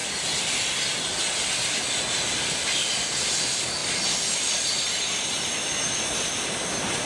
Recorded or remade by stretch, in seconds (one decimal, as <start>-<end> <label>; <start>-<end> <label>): 0.0-7.1 recorded